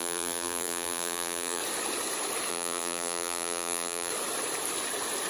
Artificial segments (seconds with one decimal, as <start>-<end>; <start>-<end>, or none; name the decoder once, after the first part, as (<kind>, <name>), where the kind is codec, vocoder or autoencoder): 0.0-1.6 (vocoder, BigVGAN v2); 2.5-4.1